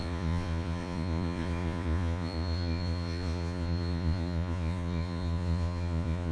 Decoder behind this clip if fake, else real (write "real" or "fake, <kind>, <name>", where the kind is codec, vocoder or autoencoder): fake, vocoder, Vocos